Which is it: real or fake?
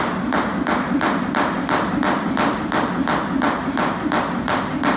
real